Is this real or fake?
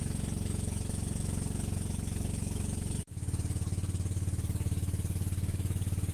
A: fake